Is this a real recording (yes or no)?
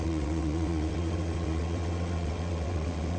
no